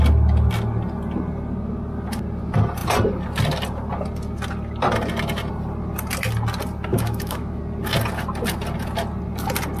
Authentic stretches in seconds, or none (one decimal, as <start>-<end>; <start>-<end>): 0.0-6.9; 7.6-9.8